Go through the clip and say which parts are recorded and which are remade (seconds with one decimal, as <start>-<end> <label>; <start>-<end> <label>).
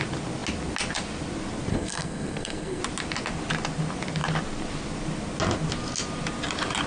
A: 0.0-1.7 recorded; 1.7-2.8 remade; 2.8-6.9 recorded